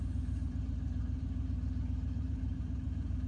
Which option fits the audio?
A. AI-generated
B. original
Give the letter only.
A